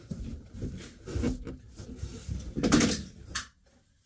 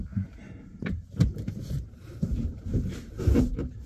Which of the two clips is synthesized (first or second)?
second